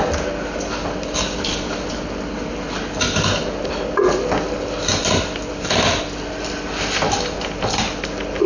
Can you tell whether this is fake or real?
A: real